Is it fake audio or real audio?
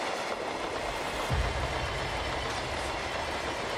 real